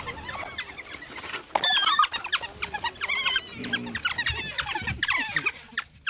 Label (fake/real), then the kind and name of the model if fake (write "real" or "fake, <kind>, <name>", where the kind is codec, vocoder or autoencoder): real